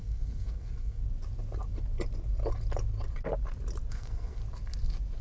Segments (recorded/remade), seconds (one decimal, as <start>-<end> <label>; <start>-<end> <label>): 0.0-1.0 remade; 1.0-3.9 recorded; 3.9-4.4 remade; 4.4-5.2 recorded